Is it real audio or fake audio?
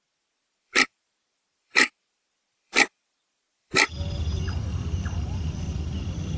fake